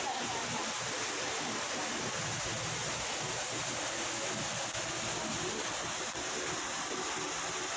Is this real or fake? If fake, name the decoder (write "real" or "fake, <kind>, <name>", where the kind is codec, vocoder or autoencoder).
real